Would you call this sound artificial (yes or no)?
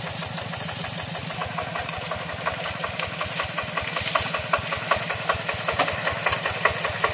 no